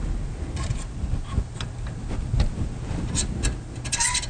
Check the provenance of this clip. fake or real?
real